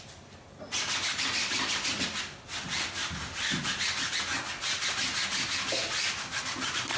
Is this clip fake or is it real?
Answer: real